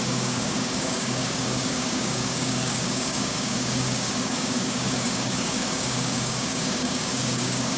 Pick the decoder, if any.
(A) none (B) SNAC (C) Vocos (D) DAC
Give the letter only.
D